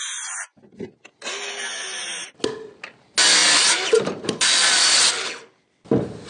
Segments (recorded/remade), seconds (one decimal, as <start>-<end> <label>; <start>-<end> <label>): 0.0-3.4 recorded; 3.4-5.1 remade; 5.1-6.3 recorded